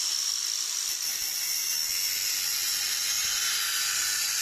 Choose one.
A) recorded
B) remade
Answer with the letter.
A